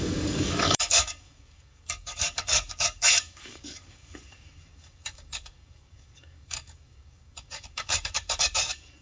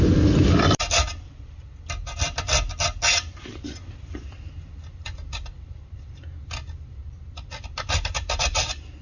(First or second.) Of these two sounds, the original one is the second